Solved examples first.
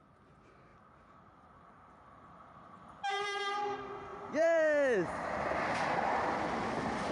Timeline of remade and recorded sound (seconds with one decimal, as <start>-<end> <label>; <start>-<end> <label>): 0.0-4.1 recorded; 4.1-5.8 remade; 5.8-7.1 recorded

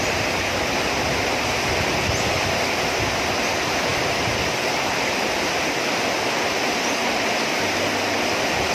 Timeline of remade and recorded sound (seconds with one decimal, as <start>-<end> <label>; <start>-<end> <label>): 0.0-3.9 recorded; 3.9-5.7 remade; 5.7-8.7 recorded

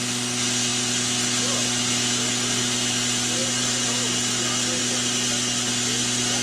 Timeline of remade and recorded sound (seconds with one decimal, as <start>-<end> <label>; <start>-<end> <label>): 0.0-6.4 recorded

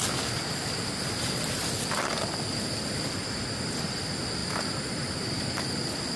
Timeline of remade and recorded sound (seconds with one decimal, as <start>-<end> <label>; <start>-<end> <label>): 0.0-6.2 recorded

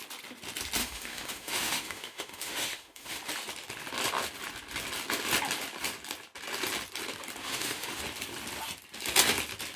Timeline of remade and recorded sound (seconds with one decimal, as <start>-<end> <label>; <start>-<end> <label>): 0.0-0.8 recorded; 0.8-3.2 remade; 3.2-7.4 recorded; 7.4-8.0 remade; 8.0-9.8 recorded

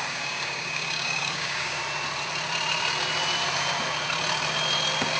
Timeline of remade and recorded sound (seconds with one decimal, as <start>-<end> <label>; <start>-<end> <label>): 0.0-1.8 remade; 1.8-5.2 recorded